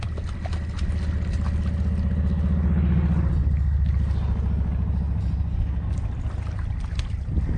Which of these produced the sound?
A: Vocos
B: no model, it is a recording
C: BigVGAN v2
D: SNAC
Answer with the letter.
B